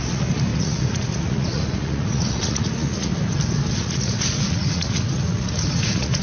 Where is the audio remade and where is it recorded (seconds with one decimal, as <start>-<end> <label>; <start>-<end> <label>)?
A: 0.0-3.1 remade; 3.1-3.7 recorded; 3.7-6.2 remade